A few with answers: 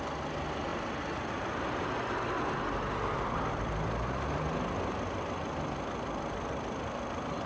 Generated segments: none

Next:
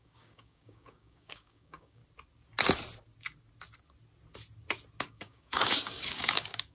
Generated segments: 0.0-2.0 (codec, DAC); 5.0-6.7

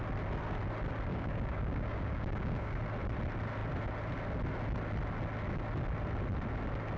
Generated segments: 1.1-2.8 (codec, DAC)

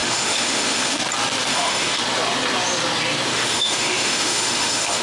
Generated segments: 0.0-1.0 (autoencoder, DAC-VAE); 1.5-2.0; 3.3-5.0

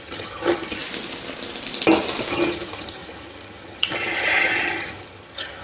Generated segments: 0.0-0.8 (vocoder, HiFi-GAN); 2.3-5.6

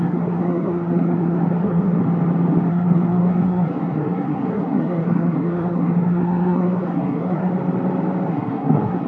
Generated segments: 0.0-2.0 (codec, SNAC); 2.7-7.5; 8.3-9.1